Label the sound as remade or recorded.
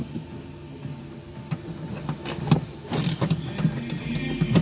recorded